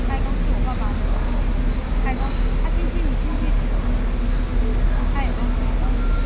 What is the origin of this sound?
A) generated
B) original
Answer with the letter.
B